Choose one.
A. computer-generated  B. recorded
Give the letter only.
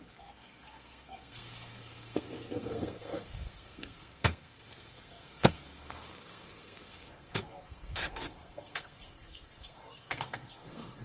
A